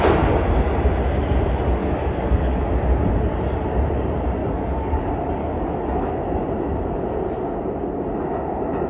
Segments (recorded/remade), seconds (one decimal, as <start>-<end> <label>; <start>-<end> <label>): 0.0-1.8 recorded; 1.8-2.7 remade; 2.7-4.4 recorded; 4.4-5.0 remade; 5.0-5.4 recorded; 5.4-6.1 remade; 6.1-8.9 recorded